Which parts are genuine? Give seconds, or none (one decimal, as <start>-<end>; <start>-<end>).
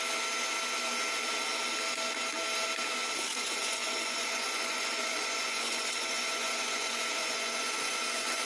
0.0-3.3